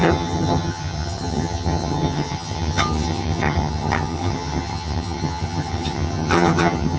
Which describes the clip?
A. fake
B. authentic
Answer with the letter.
A